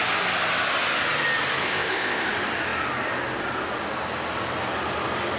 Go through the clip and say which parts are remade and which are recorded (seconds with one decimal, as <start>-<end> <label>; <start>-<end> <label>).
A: 0.0-1.6 recorded; 1.6-2.3 remade; 2.3-5.4 recorded